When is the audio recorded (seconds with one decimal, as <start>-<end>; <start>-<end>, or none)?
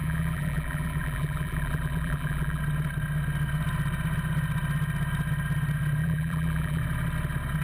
2.6-6.0; 6.8-7.6